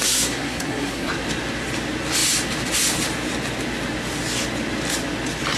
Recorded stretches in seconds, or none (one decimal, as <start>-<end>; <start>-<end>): 1.1-5.6